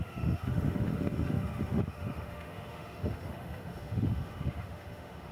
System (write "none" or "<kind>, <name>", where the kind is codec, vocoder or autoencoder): autoencoder, DAC-VAE